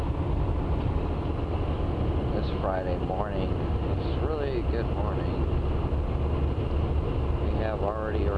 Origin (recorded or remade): recorded